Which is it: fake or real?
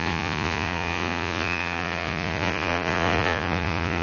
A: fake